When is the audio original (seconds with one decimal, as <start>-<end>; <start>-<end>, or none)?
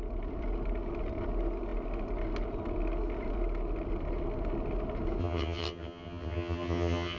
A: 0.0-5.2